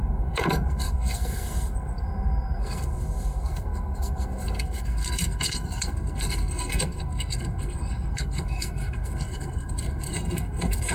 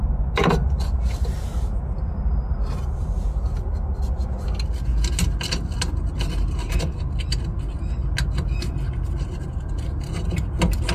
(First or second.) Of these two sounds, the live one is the second